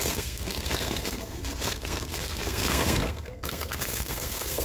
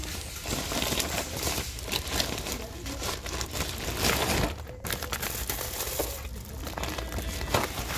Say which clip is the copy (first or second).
first